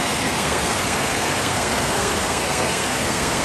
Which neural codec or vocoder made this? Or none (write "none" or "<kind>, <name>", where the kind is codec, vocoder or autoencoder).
codec, SNAC